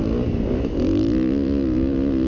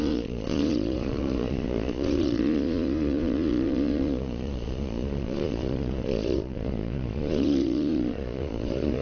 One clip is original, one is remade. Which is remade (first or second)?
second